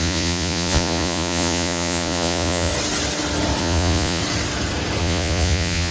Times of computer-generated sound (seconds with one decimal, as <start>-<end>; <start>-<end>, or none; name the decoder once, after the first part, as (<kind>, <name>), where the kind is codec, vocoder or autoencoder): 0.0-2.7 (vocoder, Vocos); 3.6-4.2; 5.0-5.9